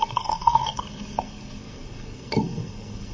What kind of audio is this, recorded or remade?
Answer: remade